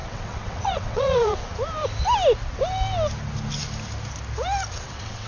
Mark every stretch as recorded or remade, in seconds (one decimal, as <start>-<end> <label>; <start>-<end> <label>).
0.0-1.5 remade; 1.5-4.7 recorded; 4.7-5.3 remade